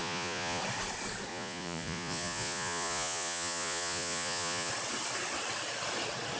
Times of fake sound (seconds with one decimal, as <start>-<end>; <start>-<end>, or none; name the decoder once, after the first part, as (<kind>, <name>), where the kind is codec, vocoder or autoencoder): 0.0-0.6 (vocoder, Vocos); 1.3-4.7